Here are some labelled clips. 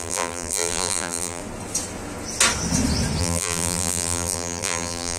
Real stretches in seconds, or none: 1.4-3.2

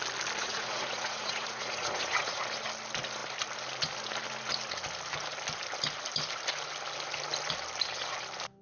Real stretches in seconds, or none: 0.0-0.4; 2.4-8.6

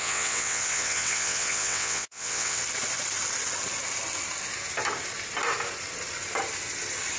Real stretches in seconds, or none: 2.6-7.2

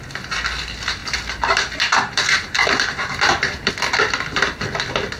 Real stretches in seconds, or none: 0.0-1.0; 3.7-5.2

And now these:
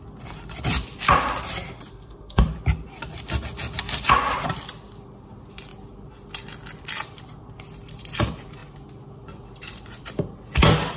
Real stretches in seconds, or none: 0.0-1.9; 2.4-11.0

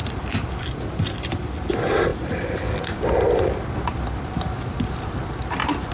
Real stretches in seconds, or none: 0.0-5.9